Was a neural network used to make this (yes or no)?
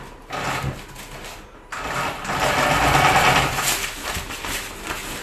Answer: no